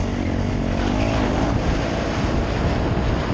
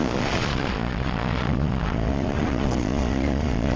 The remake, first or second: second